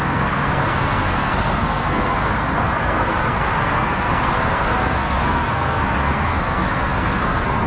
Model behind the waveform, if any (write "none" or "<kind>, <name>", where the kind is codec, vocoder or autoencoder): codec, SNAC